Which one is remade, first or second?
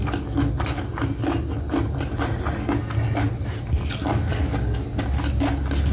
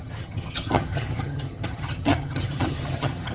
second